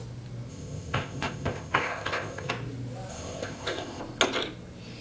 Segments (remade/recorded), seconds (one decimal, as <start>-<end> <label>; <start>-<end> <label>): 0.0-0.5 recorded; 0.5-2.5 remade; 2.5-3.1 recorded; 3.1-4.0 remade; 4.0-5.0 recorded